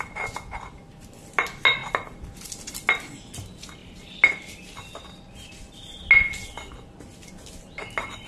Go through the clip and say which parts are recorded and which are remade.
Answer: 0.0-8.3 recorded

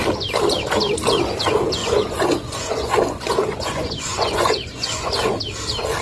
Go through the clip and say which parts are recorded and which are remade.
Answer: 0.0-1.8 recorded; 1.8-5.4 remade; 5.4-6.0 recorded

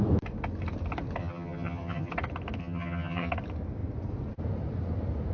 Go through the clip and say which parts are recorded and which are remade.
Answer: 0.0-1.2 recorded; 1.2-2.1 remade; 2.1-2.6 recorded; 2.6-3.3 remade; 3.3-5.3 recorded

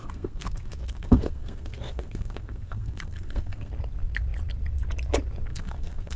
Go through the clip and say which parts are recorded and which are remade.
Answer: 0.0-3.7 remade; 3.7-5.5 recorded; 5.5-6.2 remade

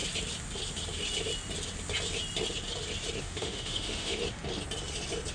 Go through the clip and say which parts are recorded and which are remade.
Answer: 0.0-3.2 recorded; 3.2-4.2 remade; 4.2-5.3 recorded

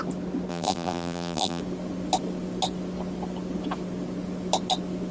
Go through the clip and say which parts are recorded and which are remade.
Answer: 0.0-0.5 recorded; 0.5-1.6 remade; 1.6-5.1 recorded

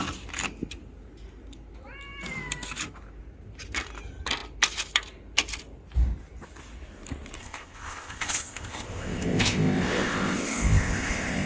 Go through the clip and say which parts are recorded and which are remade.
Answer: 0.0-7.4 recorded; 7.4-11.5 remade

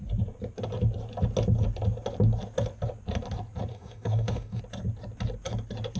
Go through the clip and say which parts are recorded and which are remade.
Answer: 0.0-3.7 recorded; 3.7-4.6 remade; 4.6-6.0 recorded